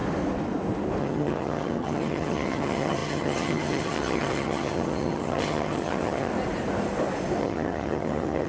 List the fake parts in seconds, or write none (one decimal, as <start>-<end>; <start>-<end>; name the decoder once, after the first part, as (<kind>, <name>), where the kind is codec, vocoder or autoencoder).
1.0-6.3 (vocoder, HiFi-GAN); 7.4-8.5

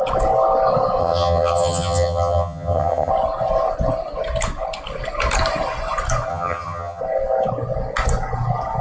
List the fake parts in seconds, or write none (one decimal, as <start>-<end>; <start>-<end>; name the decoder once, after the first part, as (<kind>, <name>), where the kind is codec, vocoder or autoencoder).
1.0-3.1 (vocoder, HiFi-GAN); 6.3-7.0

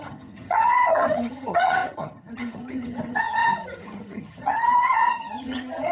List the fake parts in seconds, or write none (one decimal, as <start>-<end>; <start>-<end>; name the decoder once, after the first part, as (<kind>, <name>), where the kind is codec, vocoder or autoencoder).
0.0-5.9 (vocoder, HiFi-GAN)

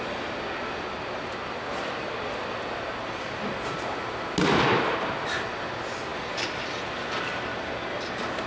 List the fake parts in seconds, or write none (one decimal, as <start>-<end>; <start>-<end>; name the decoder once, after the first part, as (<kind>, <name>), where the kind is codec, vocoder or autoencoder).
none

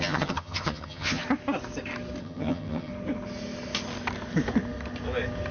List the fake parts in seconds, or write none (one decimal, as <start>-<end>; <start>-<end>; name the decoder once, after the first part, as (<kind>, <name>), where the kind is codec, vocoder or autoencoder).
0.0-1.2 (vocoder, HiFi-GAN); 2.2-2.9

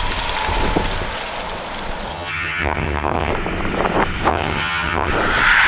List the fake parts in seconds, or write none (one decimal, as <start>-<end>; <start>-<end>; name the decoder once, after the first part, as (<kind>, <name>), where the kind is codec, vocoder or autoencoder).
2.1-3.3 (vocoder, HiFi-GAN); 4.3-5.1

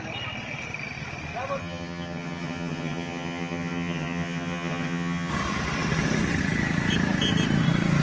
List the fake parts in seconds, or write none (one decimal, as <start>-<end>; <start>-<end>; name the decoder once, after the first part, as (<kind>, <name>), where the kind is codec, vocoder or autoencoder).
1.6-5.3 (vocoder, HiFi-GAN)

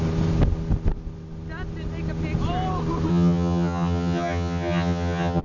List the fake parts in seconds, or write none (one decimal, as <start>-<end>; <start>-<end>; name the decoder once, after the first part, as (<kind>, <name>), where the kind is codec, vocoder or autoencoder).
3.1-5.4 (vocoder, HiFi-GAN)